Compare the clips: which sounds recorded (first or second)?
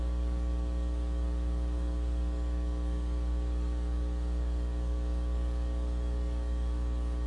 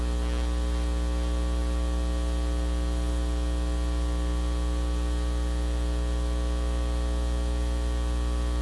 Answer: second